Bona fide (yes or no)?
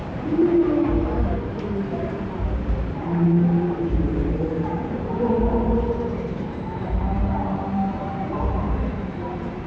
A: no